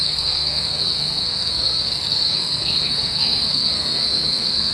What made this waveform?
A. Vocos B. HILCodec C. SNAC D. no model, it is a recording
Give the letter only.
C